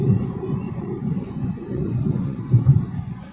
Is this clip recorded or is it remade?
remade